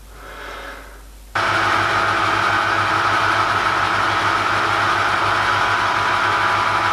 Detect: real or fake real